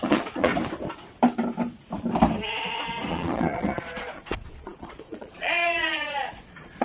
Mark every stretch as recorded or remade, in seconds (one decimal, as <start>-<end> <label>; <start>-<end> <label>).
0.0-0.5 remade; 0.5-3.1 recorded; 3.1-6.8 remade